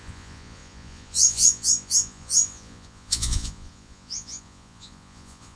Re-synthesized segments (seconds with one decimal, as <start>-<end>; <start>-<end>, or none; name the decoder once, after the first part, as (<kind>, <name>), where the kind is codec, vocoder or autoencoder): 0.0-5.6 (vocoder, Vocos)